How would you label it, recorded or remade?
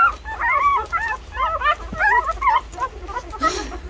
recorded